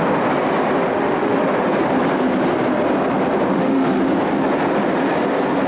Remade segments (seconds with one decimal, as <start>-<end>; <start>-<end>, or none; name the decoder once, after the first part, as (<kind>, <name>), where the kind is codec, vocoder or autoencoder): 0.9-1.5 (autoencoder, DAC-VAE); 3.5-4.0